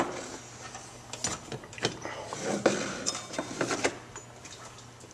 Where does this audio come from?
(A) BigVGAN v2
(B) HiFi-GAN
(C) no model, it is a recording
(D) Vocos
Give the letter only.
C